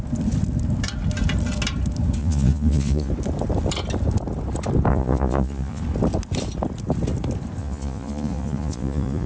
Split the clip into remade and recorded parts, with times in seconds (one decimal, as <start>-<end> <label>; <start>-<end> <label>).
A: 0.0-2.2 recorded; 2.2-3.1 remade; 3.1-4.9 recorded; 4.9-5.8 remade; 5.8-7.6 recorded; 7.6-9.3 remade